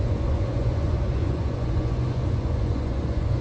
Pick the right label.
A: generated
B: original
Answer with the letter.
A